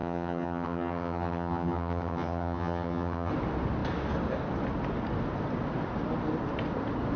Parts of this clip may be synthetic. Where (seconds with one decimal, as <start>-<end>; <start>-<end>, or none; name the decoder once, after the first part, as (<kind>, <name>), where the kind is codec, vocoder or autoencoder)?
0.0-3.3 (vocoder, HiFi-GAN)